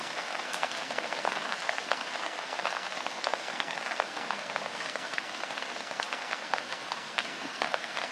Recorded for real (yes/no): no